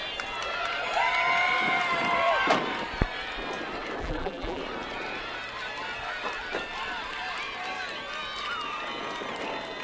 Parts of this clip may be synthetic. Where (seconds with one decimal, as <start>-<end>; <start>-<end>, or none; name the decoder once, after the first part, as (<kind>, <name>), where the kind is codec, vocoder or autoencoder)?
4.0-4.6 (vocoder, BigVGAN v2)